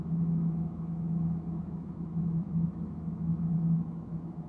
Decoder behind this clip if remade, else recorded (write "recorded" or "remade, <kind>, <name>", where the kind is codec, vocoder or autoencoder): remade, autoencoder, DAC-VAE